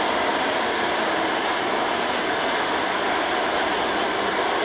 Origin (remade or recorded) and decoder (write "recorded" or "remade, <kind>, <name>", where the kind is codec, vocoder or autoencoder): recorded